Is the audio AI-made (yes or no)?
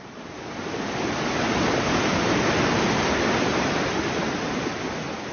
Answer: no